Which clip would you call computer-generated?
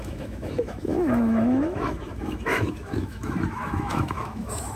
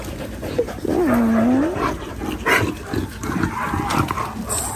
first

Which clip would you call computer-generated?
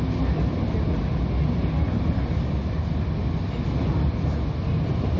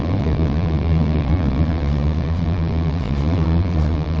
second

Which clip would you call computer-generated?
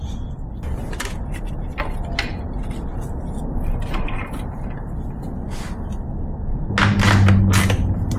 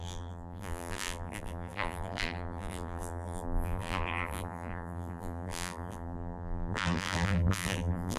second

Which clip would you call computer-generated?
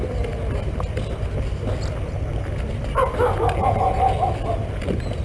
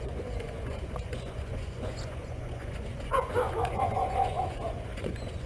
second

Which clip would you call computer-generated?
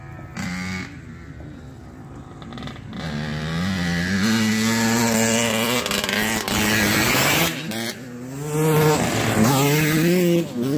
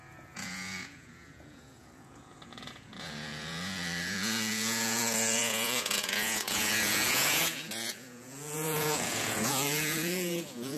second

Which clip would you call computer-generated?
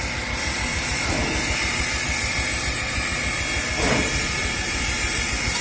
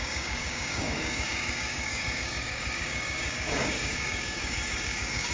second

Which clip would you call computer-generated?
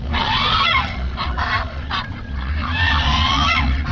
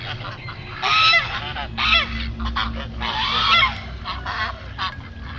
first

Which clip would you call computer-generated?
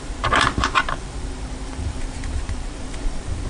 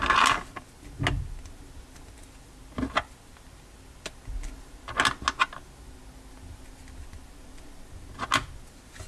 first